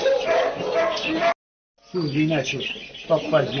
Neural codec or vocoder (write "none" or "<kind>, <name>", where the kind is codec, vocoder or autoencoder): none